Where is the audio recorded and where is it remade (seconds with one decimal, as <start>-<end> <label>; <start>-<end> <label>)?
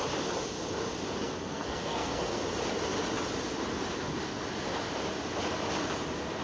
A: 0.0-1.2 recorded; 1.2-2.4 remade; 2.4-6.4 recorded